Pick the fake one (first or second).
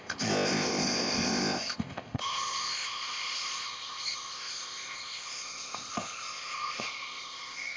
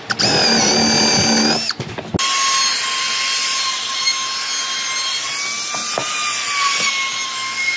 first